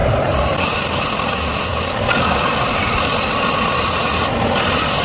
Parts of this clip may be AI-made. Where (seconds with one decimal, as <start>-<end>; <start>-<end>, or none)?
none